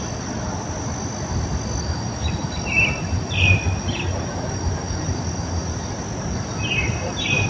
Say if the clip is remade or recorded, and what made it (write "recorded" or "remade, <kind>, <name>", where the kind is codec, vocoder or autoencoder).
recorded